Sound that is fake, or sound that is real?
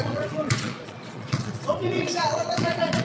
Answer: fake